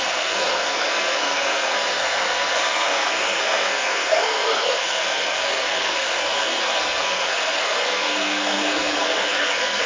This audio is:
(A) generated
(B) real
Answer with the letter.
A